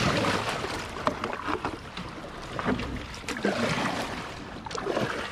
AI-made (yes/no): no